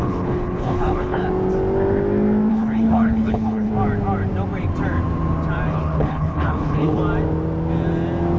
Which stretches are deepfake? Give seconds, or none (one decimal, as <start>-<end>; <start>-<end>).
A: 0.0-1.2; 2.5-3.7; 5.7-7.0